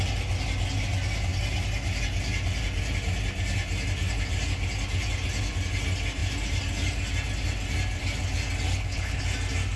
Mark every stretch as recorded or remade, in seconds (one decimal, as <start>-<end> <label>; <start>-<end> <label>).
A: 0.0-8.7 recorded; 8.7-9.2 remade; 9.2-9.8 recorded